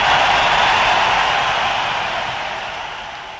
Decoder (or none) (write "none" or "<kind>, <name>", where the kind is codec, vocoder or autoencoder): none